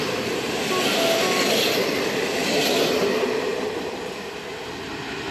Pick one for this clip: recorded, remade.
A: recorded